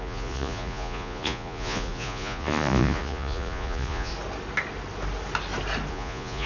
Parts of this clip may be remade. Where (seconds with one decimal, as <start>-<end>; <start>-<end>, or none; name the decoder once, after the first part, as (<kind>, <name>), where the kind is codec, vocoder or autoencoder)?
0.0-4.1 (vocoder, Vocos); 5.9-6.5